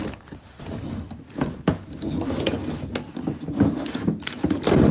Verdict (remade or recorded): recorded